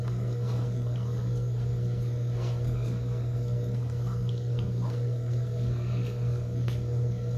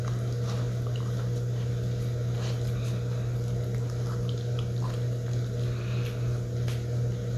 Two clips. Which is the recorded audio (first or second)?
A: second